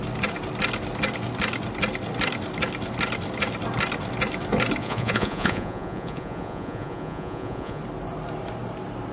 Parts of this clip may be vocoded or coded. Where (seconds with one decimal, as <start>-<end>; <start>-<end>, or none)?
4.8-7.8